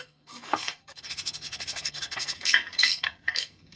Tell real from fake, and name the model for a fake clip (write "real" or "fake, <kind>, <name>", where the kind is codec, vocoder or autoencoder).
fake, codec, SNAC